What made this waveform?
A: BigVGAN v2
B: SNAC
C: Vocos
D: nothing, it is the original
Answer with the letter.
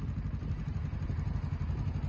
D